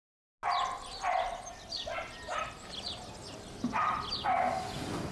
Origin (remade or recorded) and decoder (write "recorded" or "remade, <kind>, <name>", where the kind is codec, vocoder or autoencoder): recorded